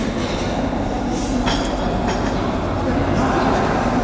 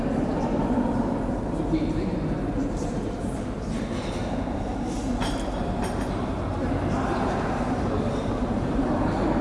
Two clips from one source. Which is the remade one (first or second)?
second